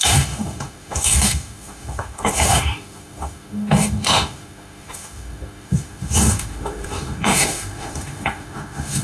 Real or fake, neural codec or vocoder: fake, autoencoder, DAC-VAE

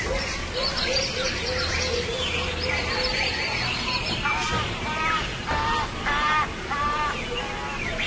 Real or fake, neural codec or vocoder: real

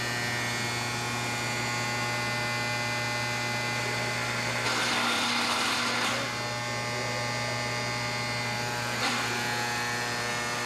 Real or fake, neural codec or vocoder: real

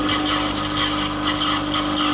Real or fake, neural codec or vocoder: real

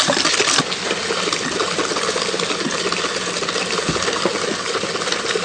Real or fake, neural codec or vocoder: real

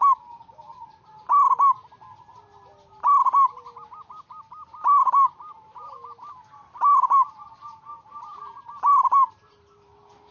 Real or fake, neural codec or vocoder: real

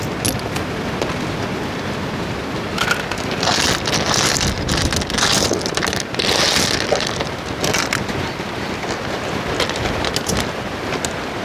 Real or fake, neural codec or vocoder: real